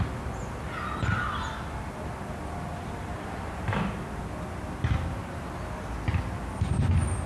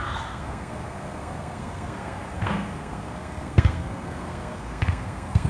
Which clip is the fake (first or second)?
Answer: second